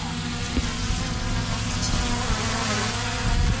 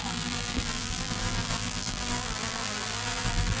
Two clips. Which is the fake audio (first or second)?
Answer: second